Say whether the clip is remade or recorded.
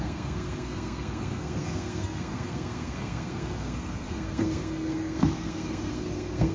remade